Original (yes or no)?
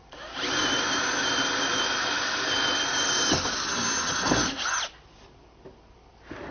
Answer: yes